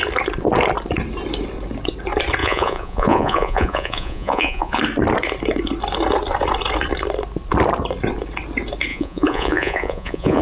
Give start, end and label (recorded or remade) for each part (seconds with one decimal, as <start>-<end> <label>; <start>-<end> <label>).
0.0-2.4 recorded; 2.4-4.8 remade; 4.8-8.9 recorded; 8.9-10.4 remade